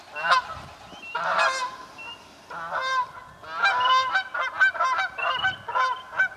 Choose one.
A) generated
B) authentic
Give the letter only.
B